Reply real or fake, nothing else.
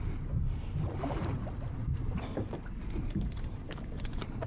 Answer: fake